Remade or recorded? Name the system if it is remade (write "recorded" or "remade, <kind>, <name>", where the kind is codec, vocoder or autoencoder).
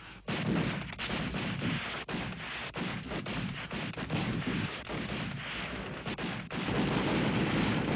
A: recorded